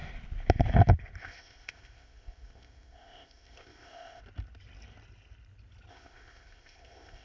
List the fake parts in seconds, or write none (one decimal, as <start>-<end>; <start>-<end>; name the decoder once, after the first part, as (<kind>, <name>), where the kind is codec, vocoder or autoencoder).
1.2-4.2 (codec, ZipCodec); 5.9-7.2